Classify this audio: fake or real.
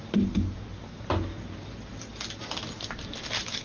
real